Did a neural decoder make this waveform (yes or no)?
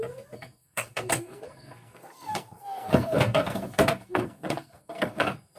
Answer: yes